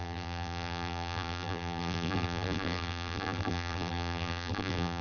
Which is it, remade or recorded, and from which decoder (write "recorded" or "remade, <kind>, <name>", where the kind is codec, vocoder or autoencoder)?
remade, vocoder, BigVGAN v2